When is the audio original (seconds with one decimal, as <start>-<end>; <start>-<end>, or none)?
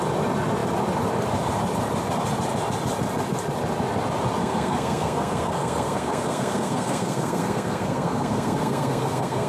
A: 0.0-4.4